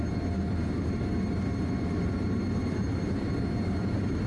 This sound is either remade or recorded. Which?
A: remade